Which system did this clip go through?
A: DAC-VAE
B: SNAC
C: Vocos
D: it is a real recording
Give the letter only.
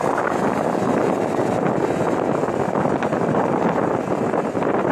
D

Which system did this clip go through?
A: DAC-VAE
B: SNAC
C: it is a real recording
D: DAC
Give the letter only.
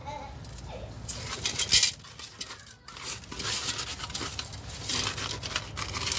C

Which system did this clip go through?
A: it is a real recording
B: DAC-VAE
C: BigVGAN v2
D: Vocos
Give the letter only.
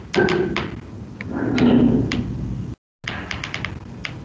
A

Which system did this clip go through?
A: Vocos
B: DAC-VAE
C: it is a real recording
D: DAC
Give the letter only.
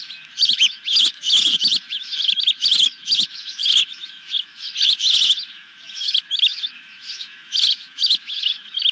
B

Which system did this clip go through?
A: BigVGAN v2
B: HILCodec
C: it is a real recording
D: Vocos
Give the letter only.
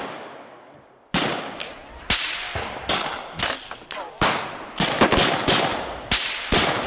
C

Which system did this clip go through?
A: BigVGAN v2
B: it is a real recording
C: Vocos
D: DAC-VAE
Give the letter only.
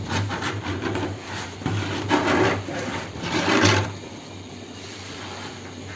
A